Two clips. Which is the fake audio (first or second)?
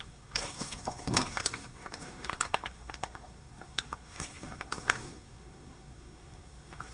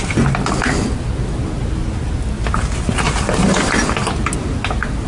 first